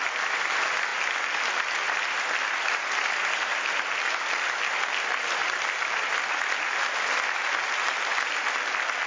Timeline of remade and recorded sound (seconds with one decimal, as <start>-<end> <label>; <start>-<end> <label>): 0.0-9.1 recorded